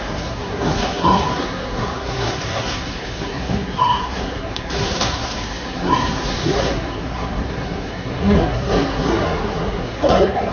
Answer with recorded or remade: remade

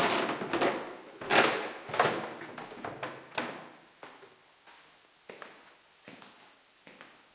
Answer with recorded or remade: recorded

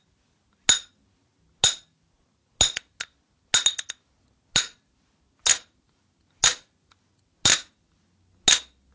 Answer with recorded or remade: recorded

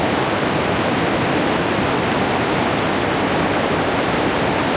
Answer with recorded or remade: recorded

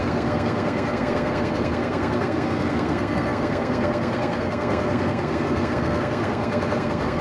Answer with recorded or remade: remade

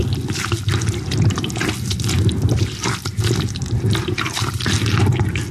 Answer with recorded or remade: recorded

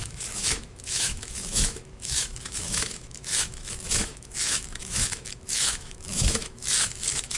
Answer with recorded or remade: remade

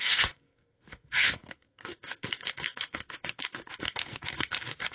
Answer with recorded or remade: remade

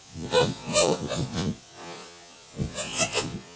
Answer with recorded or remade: remade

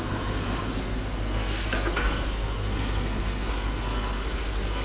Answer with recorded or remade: remade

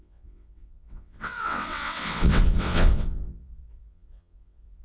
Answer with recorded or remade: remade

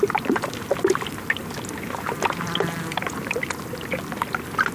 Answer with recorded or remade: recorded